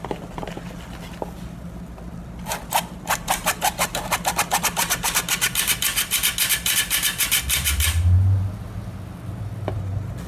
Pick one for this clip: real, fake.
real